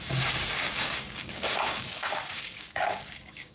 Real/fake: fake